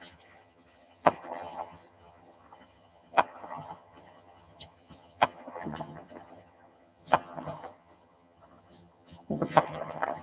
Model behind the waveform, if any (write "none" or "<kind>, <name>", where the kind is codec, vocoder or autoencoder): vocoder, HiFi-GAN